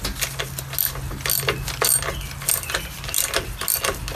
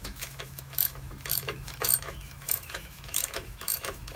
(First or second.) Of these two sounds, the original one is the first